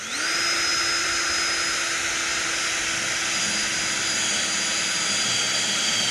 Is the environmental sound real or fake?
real